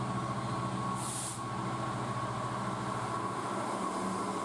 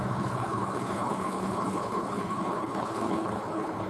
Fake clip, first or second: second